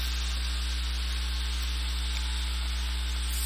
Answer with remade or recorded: recorded